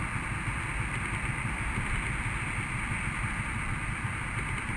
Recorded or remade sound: recorded